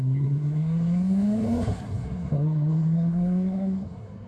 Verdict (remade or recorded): remade